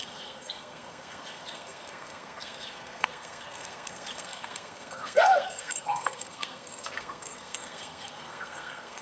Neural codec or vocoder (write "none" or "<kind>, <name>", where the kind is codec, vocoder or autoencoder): codec, SNAC